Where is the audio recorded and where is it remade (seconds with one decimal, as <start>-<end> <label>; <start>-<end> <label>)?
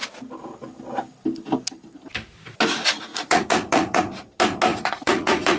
0.0-3.1 recorded; 3.1-4.0 remade; 4.0-4.7 recorded; 4.7-5.6 remade